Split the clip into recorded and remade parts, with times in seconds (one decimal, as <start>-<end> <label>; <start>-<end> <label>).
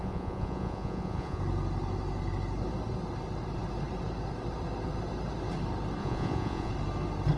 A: 0.0-1.4 remade; 1.4-6.0 recorded; 6.0-6.7 remade; 6.7-7.4 recorded